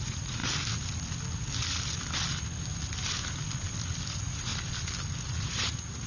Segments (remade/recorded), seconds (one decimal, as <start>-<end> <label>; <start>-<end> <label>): 0.0-0.4 remade; 0.4-4.1 recorded; 4.1-4.5 remade; 4.5-5.2 recorded; 5.2-6.1 remade